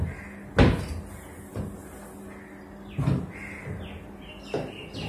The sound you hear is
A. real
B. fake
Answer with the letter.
A